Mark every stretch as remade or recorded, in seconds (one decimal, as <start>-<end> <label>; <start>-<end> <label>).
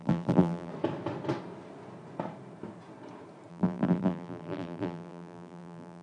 0.0-0.7 remade; 0.7-3.5 recorded; 3.5-6.0 remade